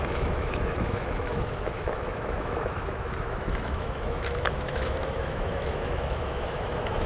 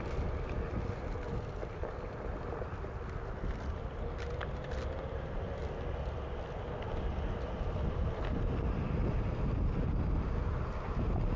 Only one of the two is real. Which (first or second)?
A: second